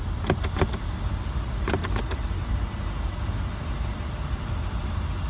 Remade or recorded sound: recorded